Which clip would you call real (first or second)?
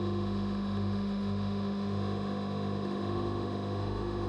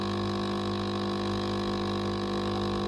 second